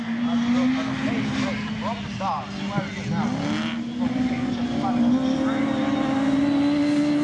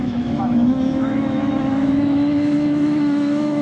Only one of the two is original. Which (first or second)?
first